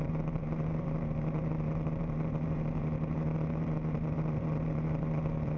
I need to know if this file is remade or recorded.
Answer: remade